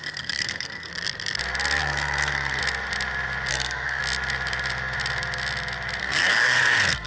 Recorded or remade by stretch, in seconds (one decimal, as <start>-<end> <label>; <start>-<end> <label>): 0.0-0.9 remade; 0.9-1.8 recorded; 1.8-2.6 remade; 2.6-3.5 recorded; 3.5-4.0 remade; 4.0-6.0 recorded; 6.0-7.1 remade